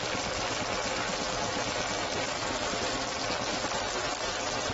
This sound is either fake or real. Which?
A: real